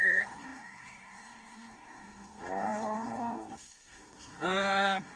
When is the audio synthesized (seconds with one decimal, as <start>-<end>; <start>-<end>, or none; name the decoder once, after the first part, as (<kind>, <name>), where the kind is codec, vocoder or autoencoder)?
0.0-5.2 (codec, SNAC)